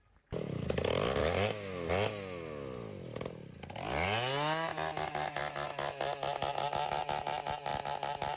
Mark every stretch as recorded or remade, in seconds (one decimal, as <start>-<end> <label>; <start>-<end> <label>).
0.0-1.2 recorded; 1.2-1.9 remade; 1.9-8.4 recorded